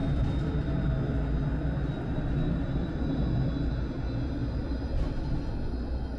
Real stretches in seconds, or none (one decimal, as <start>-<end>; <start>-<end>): 3.7-4.4; 5.4-6.2